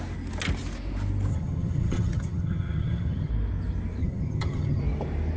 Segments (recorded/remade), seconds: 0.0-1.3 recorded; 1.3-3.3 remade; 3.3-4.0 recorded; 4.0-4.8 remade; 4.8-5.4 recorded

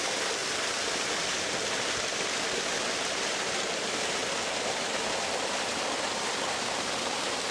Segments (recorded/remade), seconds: 0.0-0.4 remade; 0.4-2.5 recorded; 2.5-4.2 remade; 4.2-4.8 recorded; 4.8-7.5 remade

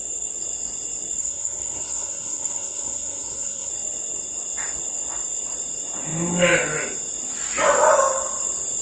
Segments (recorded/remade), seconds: 0.0-1.2 recorded; 1.2-3.7 remade; 3.7-8.8 recorded

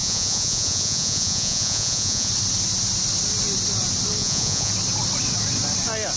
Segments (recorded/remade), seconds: 0.0-2.3 remade; 2.3-4.2 recorded; 4.2-4.7 remade; 4.7-6.2 recorded

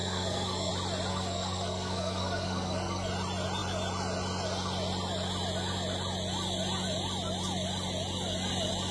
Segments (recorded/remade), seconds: 0.0-0.7 remade; 0.7-1.1 recorded; 1.1-3.1 remade; 3.1-8.9 recorded